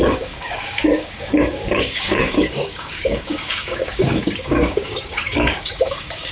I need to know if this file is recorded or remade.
remade